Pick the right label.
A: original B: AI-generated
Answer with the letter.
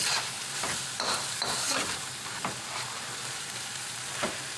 B